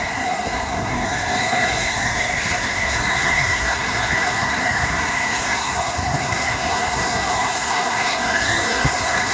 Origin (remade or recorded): remade